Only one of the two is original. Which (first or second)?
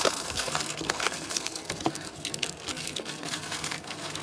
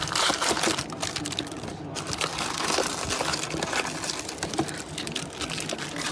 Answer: second